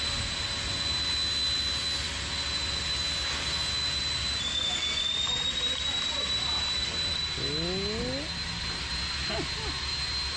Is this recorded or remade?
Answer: recorded